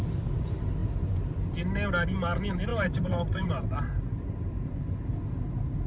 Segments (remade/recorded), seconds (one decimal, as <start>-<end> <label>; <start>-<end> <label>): 0.0-2.7 recorded; 2.7-4.8 remade; 4.8-5.9 recorded